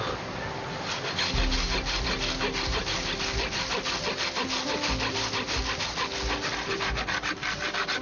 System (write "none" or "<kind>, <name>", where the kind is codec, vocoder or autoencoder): none